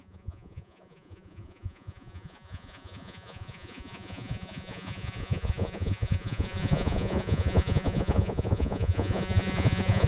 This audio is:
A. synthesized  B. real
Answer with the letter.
A